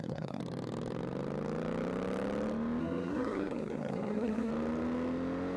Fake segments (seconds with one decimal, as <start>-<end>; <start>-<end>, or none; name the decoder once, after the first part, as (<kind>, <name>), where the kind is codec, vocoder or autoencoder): 0.0-0.4 (codec, SNAC); 2.8-4.5

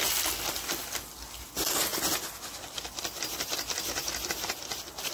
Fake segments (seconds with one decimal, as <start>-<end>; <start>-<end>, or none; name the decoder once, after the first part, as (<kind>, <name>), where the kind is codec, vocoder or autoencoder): none

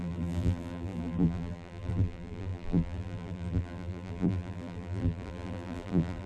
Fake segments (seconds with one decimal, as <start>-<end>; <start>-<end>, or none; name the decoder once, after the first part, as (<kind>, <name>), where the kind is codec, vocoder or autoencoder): 0.0-6.3 (vocoder, BigVGAN v2)

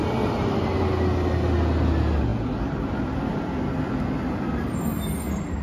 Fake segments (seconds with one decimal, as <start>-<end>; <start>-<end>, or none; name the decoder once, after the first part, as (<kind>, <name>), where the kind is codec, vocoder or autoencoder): none